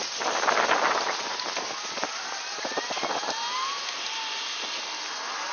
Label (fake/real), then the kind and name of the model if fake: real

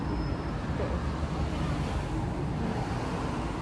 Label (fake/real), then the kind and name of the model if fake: real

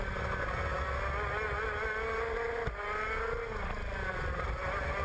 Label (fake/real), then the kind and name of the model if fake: real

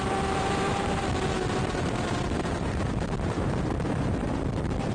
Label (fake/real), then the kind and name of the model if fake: fake, vocoder, BigVGAN v2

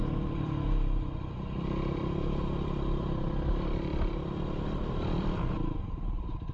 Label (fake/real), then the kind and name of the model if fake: fake, vocoder, BigVGAN v2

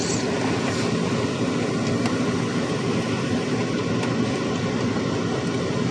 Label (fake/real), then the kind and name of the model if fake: real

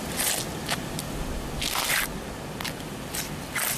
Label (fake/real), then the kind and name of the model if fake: real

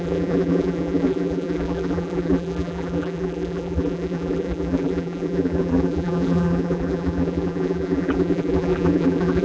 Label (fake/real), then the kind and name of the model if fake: fake, vocoder, BigVGAN v2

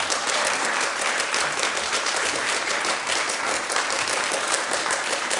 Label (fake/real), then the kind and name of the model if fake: fake, vocoder, BigVGAN v2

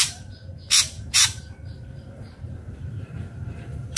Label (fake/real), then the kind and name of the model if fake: fake, vocoder, BigVGAN v2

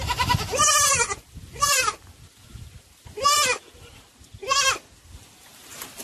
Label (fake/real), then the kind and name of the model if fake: real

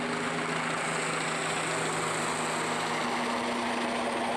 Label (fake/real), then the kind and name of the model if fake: real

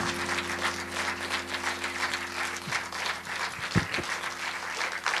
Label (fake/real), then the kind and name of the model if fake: real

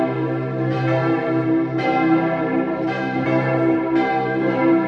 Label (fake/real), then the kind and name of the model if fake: fake, vocoder, BigVGAN v2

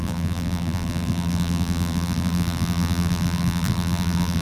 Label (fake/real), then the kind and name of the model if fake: fake, vocoder, BigVGAN v2